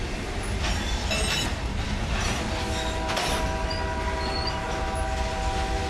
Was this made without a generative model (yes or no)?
yes